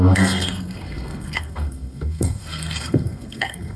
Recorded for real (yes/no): no